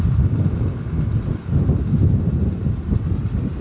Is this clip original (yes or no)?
yes